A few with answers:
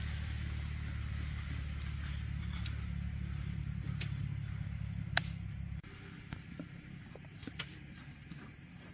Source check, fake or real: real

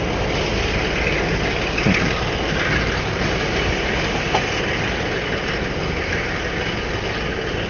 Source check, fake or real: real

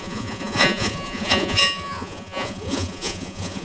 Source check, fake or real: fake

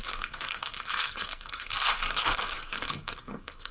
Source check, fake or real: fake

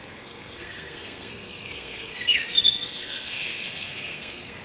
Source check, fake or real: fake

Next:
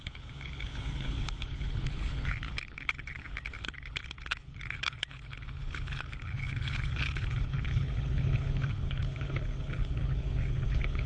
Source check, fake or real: fake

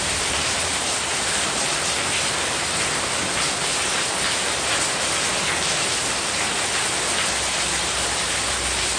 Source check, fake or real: real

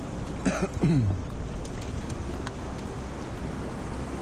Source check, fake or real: real